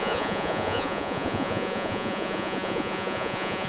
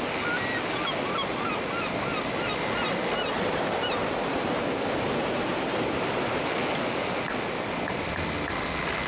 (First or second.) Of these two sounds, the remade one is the first